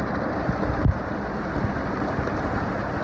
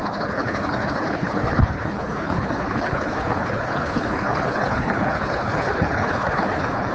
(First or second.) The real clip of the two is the first